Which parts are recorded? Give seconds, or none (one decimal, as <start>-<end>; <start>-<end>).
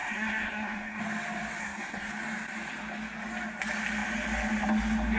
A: 1.0-1.6; 2.1-5.2